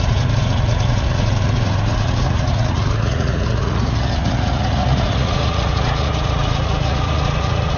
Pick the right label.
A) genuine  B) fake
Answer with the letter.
B